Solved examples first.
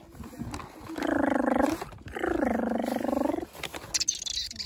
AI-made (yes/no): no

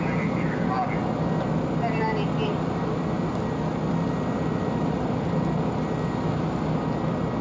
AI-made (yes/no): no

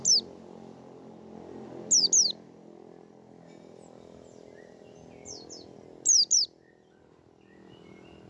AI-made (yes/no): no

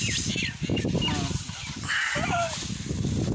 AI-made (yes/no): no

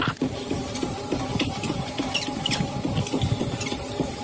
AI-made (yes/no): no